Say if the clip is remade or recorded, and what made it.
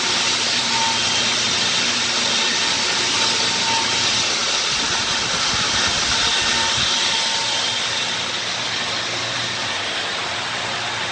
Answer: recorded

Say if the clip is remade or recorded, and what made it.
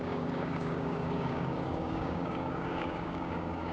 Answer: remade, codec, DAC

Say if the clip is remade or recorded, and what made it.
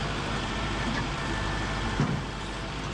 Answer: remade, vocoder, BigVGAN v2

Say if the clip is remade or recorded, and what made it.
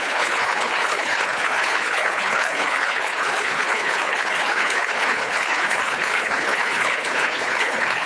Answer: remade, codec, HILCodec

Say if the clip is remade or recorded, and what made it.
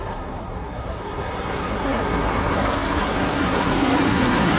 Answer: remade, codec, SNAC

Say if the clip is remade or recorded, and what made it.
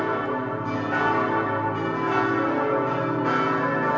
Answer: recorded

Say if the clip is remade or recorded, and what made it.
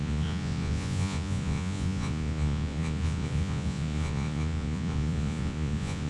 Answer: remade, vocoder, Vocos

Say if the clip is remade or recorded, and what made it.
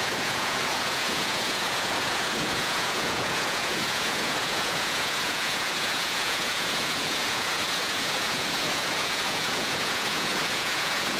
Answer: remade, vocoder, Vocos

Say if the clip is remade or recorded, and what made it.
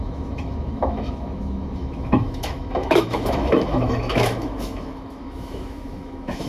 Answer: remade, autoencoder, DAC-VAE